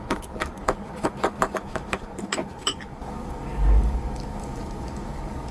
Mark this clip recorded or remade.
remade